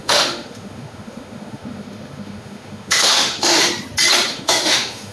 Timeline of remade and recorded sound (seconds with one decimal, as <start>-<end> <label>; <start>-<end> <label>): 0.0-3.7 remade; 3.7-4.3 recorded; 4.3-5.1 remade